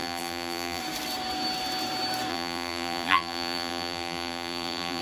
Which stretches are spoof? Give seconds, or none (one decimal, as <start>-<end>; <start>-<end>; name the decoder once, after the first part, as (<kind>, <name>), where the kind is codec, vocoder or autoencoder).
0.0-0.8 (vocoder, BigVGAN v2); 2.3-5.0